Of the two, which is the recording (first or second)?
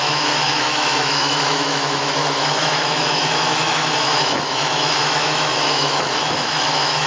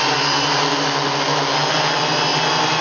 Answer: second